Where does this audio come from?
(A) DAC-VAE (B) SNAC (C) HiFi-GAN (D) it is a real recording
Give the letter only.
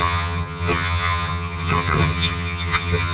C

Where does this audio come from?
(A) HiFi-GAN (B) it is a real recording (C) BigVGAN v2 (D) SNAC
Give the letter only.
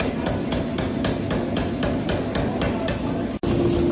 B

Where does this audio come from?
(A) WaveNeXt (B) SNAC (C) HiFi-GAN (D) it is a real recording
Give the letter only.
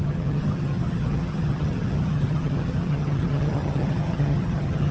C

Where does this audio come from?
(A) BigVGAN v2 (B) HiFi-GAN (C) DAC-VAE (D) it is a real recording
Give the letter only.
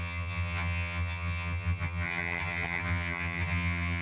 B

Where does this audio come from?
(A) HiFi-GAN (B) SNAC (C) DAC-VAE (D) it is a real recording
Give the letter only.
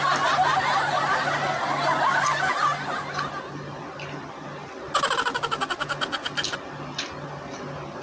D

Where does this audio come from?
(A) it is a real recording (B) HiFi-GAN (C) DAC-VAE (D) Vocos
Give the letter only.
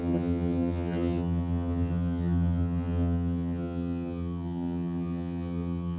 B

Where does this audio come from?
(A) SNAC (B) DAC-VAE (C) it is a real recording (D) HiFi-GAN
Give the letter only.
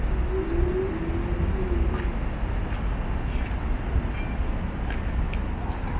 C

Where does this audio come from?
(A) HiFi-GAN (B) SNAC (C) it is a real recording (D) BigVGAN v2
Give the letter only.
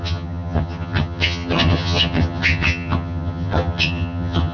A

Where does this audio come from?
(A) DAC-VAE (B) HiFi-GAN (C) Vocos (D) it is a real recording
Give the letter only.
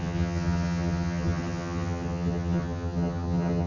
B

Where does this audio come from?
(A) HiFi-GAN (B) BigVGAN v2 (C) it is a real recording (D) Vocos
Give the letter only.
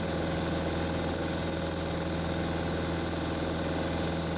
C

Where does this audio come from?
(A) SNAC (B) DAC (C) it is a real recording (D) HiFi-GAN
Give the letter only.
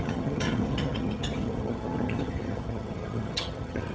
D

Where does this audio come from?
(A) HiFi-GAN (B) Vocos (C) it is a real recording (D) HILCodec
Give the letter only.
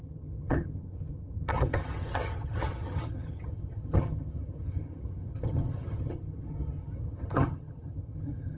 A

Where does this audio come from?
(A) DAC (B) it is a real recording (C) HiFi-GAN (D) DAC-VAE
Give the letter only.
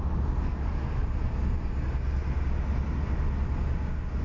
B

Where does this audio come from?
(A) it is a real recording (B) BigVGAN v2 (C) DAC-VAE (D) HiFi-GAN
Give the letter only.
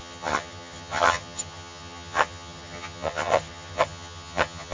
D